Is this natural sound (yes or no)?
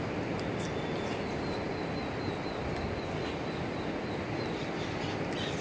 yes